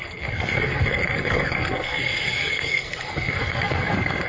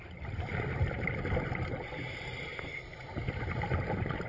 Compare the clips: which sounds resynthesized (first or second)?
first